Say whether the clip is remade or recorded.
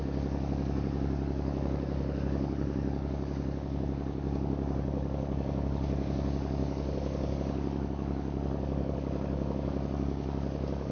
remade